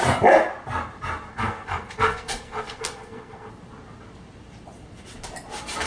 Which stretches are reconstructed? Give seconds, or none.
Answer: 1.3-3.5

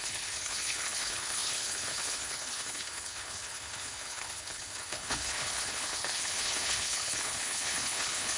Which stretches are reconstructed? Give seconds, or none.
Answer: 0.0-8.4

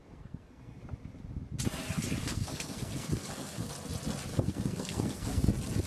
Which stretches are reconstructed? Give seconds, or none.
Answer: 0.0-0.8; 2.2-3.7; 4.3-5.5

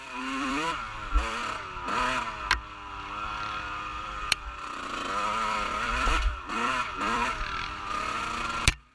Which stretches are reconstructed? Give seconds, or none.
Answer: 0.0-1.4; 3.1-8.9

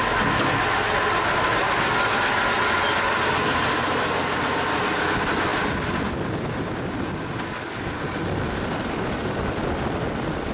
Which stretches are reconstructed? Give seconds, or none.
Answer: none